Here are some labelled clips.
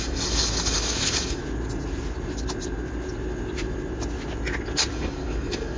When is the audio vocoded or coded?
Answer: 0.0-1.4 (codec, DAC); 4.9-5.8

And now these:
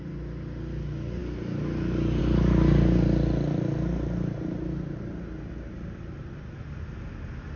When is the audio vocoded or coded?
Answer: none

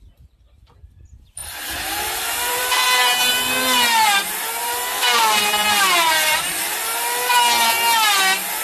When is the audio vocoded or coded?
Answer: 1.4-3.3 (vocoder, BigVGAN v2); 4.6-6.6

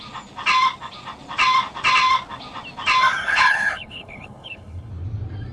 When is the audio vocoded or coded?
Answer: 3.2-4.9 (codec, HILCodec)

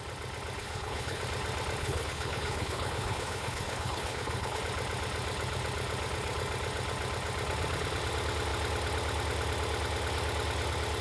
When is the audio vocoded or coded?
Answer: 0.6-1.2 (codec, HILCodec); 1.8-4.6

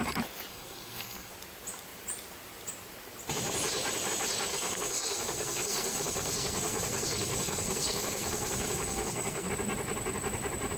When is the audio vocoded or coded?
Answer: 0.5-1.3 (codec, SNAC); 4.5-9.5

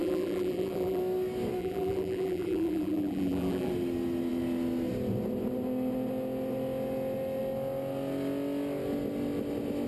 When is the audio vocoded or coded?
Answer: 0.0-1.0 (vocoder, BigVGAN v2); 1.6-3.7